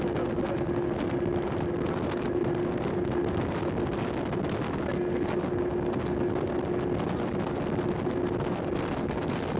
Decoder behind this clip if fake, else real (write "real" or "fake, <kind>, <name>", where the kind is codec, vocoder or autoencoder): real